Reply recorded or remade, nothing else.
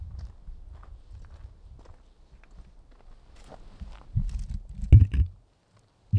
recorded